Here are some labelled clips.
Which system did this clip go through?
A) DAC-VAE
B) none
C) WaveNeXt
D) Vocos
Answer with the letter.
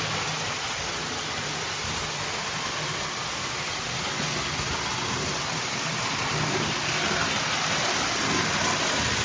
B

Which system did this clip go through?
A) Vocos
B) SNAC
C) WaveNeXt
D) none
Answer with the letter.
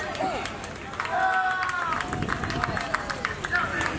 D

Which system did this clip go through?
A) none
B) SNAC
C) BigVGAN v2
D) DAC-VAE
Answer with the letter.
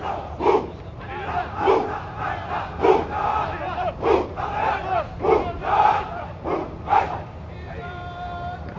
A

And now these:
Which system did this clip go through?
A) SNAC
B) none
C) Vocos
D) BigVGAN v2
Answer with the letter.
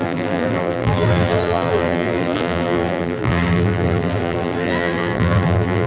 D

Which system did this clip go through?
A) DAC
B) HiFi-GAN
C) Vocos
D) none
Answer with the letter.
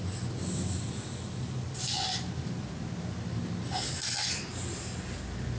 D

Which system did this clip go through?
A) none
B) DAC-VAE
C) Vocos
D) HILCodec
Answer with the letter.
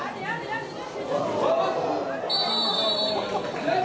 A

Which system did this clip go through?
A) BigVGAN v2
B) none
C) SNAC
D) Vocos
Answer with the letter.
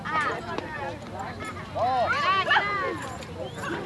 B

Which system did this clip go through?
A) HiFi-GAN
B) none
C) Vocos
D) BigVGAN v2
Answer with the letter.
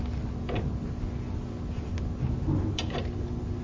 B